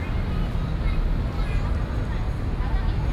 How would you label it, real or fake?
real